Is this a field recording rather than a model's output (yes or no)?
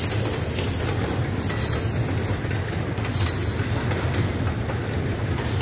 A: yes